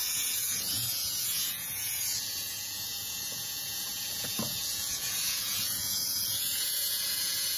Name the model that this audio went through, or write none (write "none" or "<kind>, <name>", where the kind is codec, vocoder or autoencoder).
vocoder, Vocos